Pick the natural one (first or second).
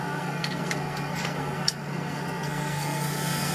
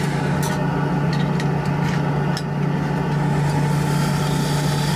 second